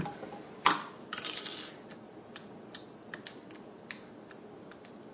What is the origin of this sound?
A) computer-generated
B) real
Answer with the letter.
B